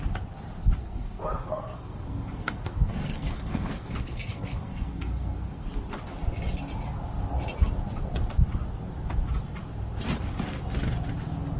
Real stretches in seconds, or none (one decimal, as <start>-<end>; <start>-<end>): 0.0-0.8; 5.7-11.6